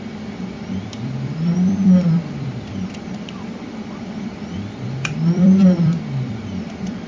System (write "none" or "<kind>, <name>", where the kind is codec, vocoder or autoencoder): vocoder, BigVGAN v2